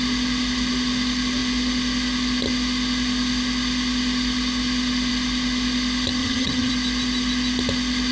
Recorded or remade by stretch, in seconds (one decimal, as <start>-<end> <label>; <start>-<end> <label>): 0.0-6.2 recorded; 6.2-6.7 remade; 6.7-8.1 recorded

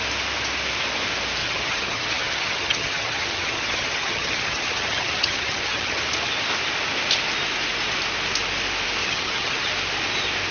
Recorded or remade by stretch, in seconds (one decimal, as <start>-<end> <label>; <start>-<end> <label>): 0.0-1.4 recorded; 1.4-6.0 remade; 6.0-9.0 recorded; 9.0-9.7 remade; 9.7-10.5 recorded

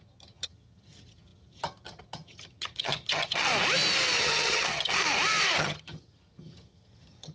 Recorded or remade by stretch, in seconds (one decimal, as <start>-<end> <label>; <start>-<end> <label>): 0.0-3.5 remade; 3.5-4.2 recorded; 4.2-5.0 remade; 5.0-5.6 recorded; 5.6-7.3 remade